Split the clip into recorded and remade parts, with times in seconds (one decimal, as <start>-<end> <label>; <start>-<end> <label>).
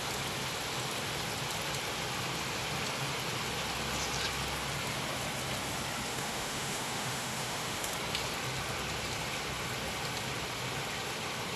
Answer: 0.0-6.1 recorded; 6.1-7.9 remade; 7.9-11.6 recorded